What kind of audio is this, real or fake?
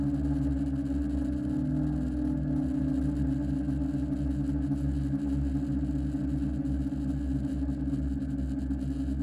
real